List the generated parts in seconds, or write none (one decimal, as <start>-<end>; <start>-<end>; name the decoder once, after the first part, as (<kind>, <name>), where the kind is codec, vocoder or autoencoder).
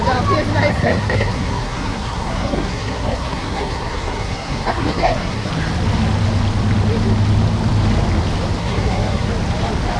0.7-5.5 (codec, SNAC); 8.6-9.3